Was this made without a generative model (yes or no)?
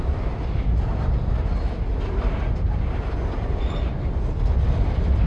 yes